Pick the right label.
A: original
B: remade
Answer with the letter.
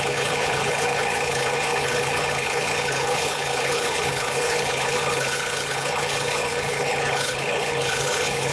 B